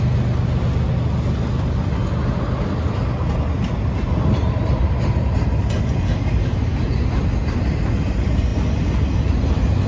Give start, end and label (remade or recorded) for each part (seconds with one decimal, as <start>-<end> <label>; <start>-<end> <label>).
0.0-9.9 recorded